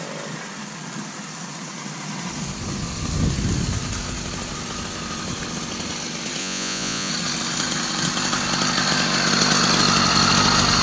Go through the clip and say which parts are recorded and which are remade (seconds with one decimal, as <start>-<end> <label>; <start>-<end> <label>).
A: 0.0-6.4 recorded; 6.4-7.1 remade; 7.1-10.8 recorded